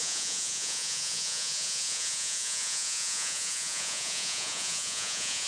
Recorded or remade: remade